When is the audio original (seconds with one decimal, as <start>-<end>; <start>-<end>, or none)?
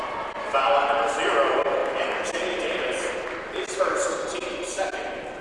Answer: 0.0-5.4